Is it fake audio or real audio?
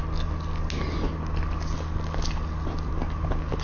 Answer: real